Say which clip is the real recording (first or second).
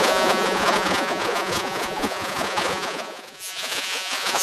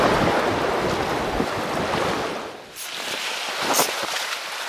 second